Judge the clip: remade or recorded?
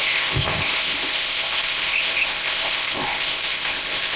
remade